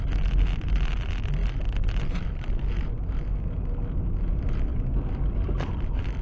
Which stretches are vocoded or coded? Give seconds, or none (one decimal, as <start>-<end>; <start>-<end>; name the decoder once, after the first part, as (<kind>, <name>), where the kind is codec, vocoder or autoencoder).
none